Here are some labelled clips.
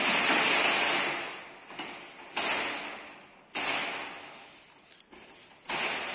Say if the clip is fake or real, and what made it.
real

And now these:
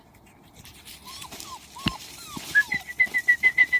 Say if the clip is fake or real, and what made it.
fake, vocoder, BigVGAN v2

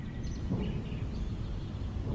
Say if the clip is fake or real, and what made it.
real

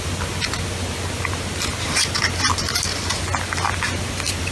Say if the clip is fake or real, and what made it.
real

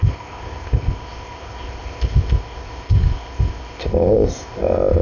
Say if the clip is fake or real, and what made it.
fake, codec, ZipCodec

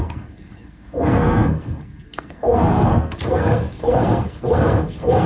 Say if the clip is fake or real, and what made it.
fake, codec, SNAC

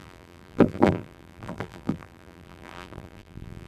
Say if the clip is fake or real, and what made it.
fake, vocoder, BigVGAN v2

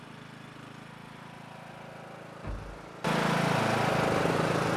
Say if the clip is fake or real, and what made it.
real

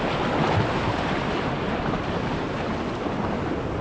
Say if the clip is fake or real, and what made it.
real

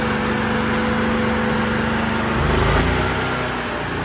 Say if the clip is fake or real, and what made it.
real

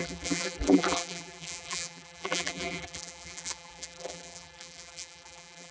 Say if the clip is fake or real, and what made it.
fake, vocoder, BigVGAN v2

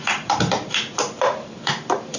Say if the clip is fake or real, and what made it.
fake, vocoder, BigVGAN v2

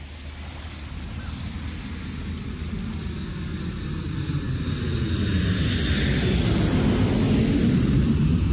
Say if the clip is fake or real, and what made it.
real